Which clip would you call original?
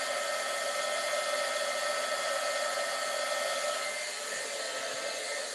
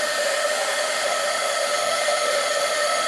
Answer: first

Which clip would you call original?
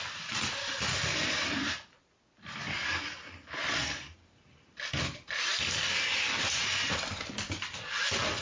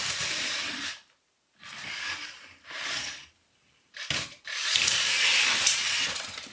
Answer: first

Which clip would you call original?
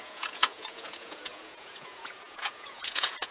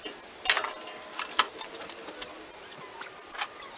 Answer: second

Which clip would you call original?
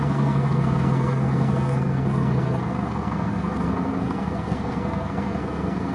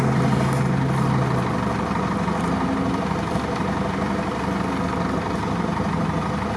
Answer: second